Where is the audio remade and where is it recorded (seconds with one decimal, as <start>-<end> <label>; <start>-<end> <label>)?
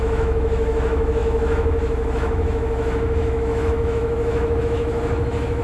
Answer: 0.0-5.6 remade